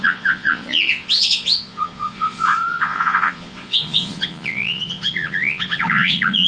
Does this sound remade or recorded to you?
remade